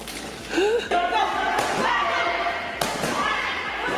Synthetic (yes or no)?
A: no